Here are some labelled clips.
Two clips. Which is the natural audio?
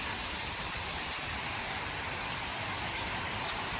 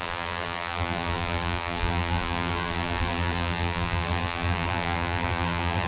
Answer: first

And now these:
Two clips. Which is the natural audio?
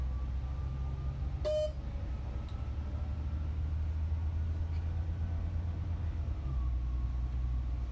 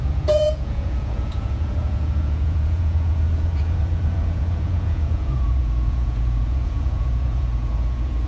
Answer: first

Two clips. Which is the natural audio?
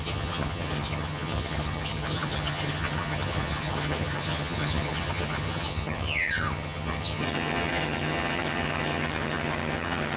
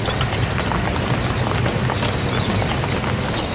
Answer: second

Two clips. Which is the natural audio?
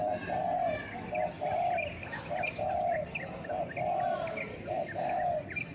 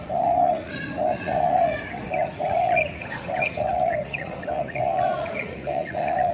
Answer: first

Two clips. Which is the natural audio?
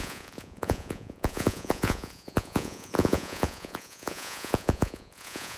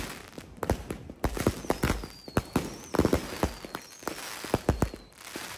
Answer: second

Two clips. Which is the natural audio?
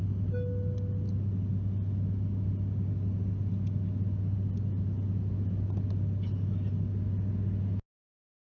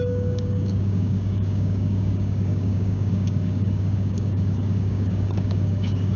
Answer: first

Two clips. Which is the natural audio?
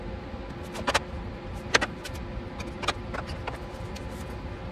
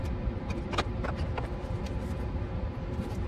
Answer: first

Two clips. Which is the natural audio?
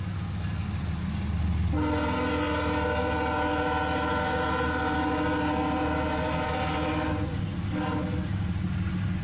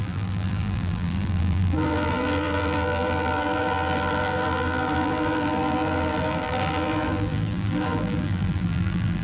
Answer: first